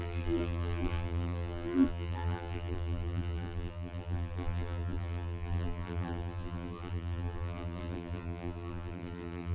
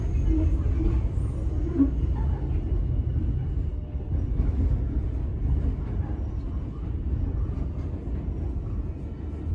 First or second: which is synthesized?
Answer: first